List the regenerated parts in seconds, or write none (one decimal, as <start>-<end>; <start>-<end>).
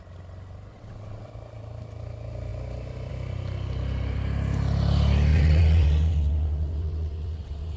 0.7-1.3; 5.3-7.8